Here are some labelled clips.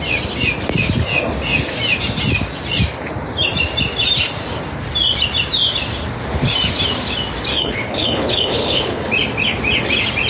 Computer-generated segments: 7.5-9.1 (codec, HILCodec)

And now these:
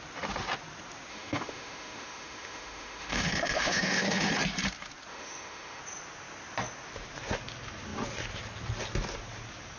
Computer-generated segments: 1.1-4.3 (autoencoder, DAC-VAE); 5.1-5.8

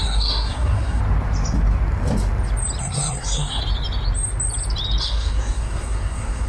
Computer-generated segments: 0.0-1.0 (codec, SNAC); 2.8-3.6; 5.0-6.5

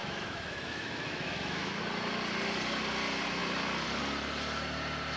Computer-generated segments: 0.0-1.8 (autoencoder, DAC-VAE)

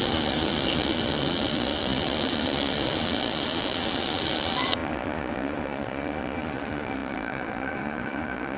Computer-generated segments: 0.0-8.6 (vocoder, Vocos)